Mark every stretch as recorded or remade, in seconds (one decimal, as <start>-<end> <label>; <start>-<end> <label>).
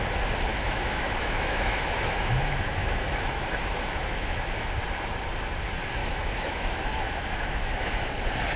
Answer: 0.0-0.5 recorded; 0.5-4.7 remade; 4.7-6.0 recorded; 6.0-8.1 remade; 8.1-8.6 recorded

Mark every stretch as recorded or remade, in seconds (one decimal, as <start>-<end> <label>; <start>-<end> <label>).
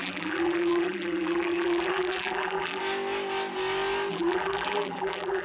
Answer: 0.0-2.8 remade; 2.8-4.1 recorded; 4.1-5.4 remade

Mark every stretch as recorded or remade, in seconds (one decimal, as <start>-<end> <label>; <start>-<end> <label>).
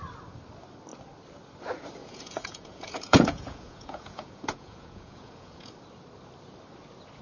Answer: 0.0-2.0 recorded; 2.0-5.7 remade; 5.7-7.2 recorded